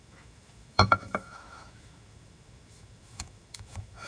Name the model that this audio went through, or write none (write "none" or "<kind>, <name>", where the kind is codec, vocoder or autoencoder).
autoencoder, DAC-VAE